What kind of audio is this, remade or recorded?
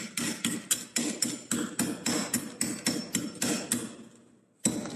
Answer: recorded